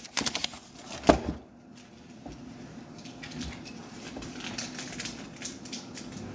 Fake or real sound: real